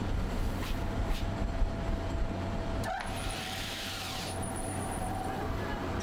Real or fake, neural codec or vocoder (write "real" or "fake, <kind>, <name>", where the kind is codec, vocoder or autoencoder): fake, vocoder, BigVGAN v2